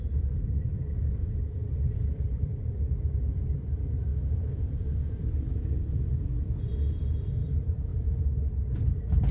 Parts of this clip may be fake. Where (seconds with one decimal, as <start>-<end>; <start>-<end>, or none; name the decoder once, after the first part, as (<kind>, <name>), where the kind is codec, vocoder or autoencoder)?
0.0-9.3 (vocoder, BigVGAN v2)